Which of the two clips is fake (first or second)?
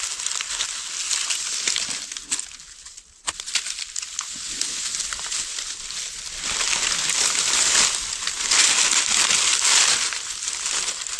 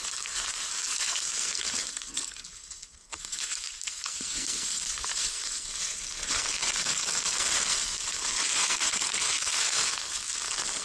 second